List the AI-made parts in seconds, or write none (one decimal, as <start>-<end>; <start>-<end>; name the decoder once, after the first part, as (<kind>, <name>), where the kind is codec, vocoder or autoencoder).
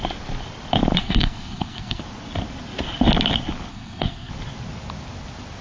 1.0-2.0 (codec, SNAC); 3.7-4.3